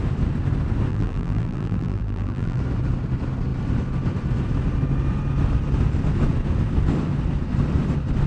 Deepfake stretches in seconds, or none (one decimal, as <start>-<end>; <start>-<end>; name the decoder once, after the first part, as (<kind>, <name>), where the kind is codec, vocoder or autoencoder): 0.9-2.6 (vocoder, BigVGAN v2)